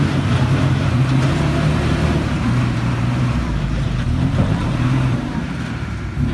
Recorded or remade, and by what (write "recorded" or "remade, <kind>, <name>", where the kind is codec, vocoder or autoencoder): remade, vocoder, BigVGAN v2